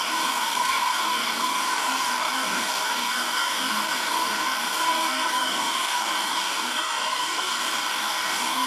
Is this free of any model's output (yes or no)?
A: no